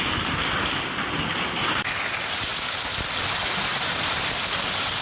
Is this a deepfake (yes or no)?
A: no